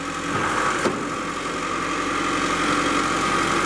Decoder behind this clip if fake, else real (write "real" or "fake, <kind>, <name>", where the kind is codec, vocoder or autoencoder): real